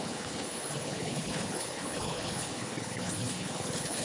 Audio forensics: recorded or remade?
remade